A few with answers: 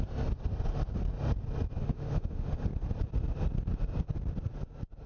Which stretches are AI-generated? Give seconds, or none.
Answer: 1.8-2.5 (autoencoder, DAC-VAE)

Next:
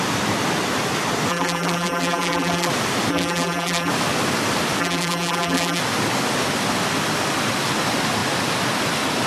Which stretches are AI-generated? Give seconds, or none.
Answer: 1.3-2.7 (vocoder, BigVGAN v2); 3.1-3.9; 4.8-5.8